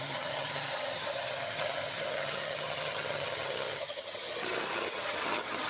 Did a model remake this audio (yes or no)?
yes